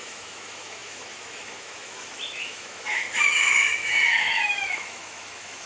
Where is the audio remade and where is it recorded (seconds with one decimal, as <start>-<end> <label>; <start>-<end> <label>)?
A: 0.0-5.7 remade